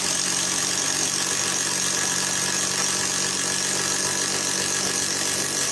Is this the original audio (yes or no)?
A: yes